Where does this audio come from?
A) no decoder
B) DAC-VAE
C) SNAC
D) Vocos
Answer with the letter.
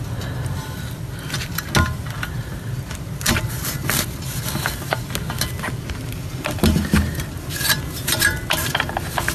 A